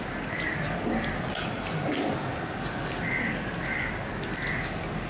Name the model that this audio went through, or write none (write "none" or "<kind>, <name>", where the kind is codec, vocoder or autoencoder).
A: none